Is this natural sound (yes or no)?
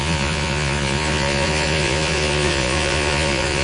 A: no